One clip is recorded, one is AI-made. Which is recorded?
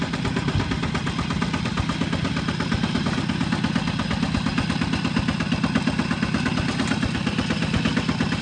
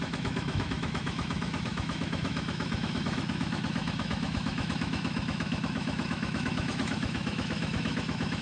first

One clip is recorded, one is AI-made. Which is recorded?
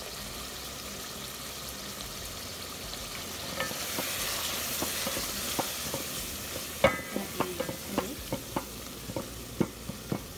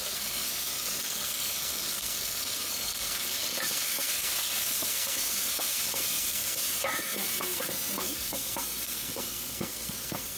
first